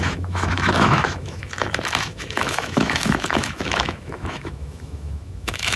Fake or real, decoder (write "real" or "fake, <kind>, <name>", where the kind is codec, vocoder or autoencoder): fake, autoencoder, DAC-VAE